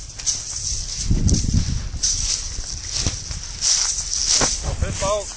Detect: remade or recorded recorded